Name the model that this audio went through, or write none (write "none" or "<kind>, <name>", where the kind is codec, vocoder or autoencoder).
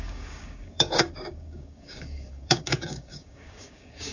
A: codec, DAC